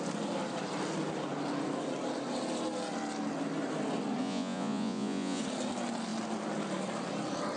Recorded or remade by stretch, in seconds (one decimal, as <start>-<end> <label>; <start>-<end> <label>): 0.0-4.2 recorded; 4.2-5.4 remade; 5.4-7.6 recorded